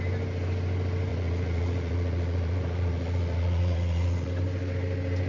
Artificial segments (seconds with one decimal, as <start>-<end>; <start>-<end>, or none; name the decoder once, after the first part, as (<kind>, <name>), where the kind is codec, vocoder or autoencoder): 1.1-4.3 (vocoder, Vocos)